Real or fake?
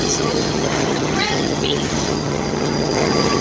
fake